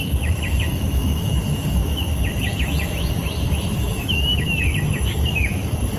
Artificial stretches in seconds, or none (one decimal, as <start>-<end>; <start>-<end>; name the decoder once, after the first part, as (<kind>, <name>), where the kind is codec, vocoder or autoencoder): 0.0-6.0 (autoencoder, DAC-VAE)